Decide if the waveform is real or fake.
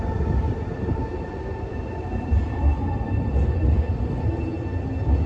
real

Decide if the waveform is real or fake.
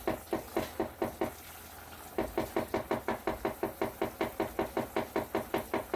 real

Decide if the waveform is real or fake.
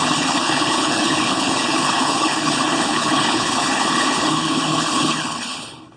fake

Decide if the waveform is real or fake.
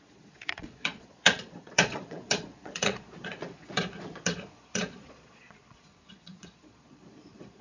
fake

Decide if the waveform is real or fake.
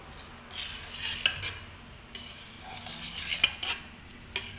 real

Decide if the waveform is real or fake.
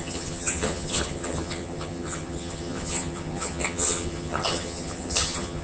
fake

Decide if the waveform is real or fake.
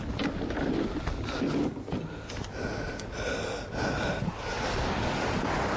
real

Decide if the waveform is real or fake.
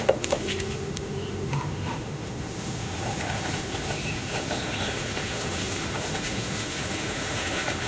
fake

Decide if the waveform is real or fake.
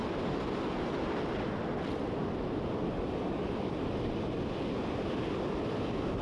real